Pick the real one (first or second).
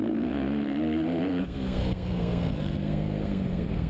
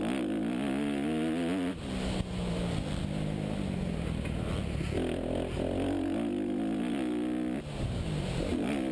second